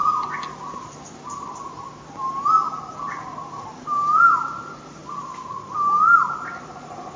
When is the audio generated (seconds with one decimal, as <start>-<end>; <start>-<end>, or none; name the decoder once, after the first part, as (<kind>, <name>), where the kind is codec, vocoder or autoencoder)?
3.4-5.0 (vocoder, BigVGAN v2); 6.5-7.2